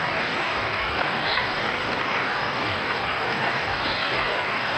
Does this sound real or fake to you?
fake